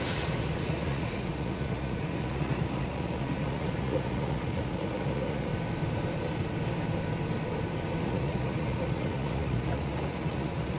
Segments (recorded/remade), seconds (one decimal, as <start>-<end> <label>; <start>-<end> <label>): 0.0-5.5 remade; 5.5-8.0 recorded; 8.0-10.8 remade